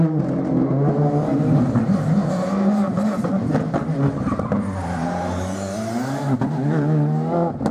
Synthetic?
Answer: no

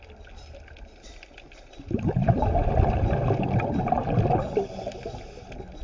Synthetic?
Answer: no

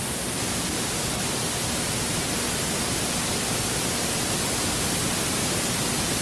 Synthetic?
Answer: no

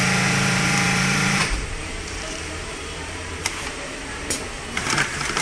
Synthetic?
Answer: yes